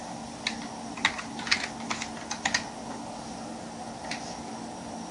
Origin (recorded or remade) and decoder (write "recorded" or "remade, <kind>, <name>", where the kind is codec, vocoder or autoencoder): recorded